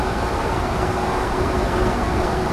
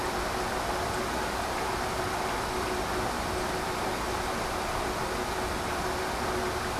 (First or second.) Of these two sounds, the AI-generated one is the first